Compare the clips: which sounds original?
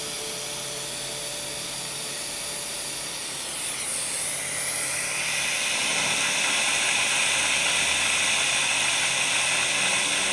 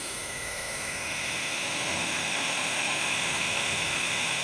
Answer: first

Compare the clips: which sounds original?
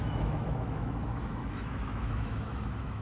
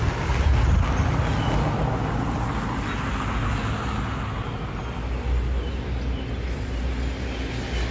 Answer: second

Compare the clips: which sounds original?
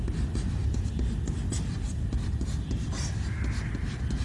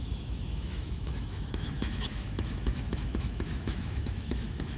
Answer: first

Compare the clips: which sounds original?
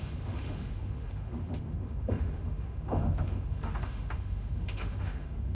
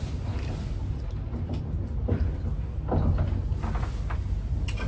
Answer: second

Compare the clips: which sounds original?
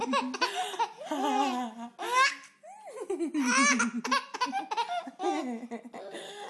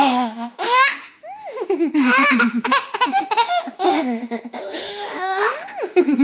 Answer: first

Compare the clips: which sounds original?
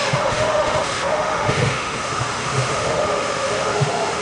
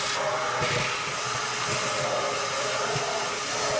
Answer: second